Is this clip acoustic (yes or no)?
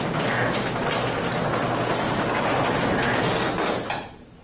yes